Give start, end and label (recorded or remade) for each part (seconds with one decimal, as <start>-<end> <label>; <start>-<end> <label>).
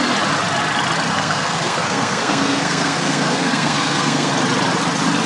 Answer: 0.0-1.1 recorded; 1.1-4.3 remade; 4.3-5.3 recorded